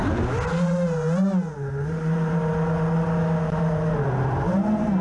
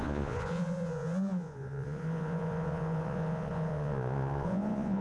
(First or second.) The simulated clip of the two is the second